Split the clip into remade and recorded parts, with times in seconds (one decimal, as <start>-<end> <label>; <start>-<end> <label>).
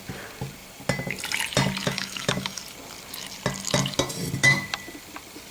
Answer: 0.0-1.8 recorded; 1.8-2.6 remade; 2.6-5.5 recorded